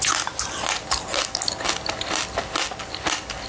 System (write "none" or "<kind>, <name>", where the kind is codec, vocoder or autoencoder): none